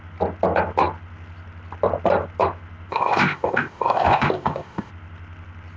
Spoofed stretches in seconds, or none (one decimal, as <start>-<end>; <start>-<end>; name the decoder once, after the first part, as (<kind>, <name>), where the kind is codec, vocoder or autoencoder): 2.9-4.9 (codec, ZipCodec)